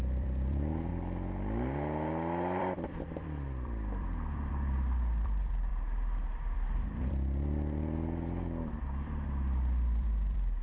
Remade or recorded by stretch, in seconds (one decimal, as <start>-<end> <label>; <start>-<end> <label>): 0.0-0.9 remade; 0.9-2.6 recorded; 2.6-10.6 remade

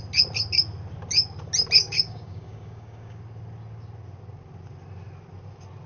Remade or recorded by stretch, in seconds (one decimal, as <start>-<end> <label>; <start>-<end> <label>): 0.0-1.8 recorded; 1.8-3.2 remade; 3.2-5.9 recorded